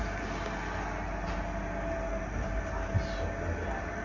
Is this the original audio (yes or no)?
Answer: yes